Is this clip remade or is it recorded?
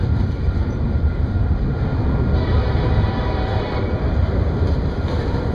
remade